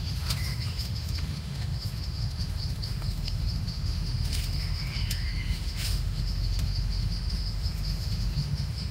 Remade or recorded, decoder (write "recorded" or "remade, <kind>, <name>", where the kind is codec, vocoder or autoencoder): remade, autoencoder, DAC-VAE